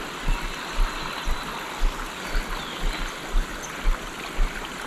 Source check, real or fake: real